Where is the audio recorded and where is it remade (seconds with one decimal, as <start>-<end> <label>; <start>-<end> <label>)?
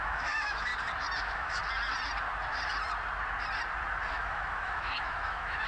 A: 0.0-0.7 remade; 0.7-1.2 recorded; 1.2-1.6 remade; 1.6-4.1 recorded; 4.1-5.7 remade